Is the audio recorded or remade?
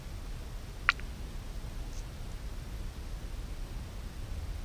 recorded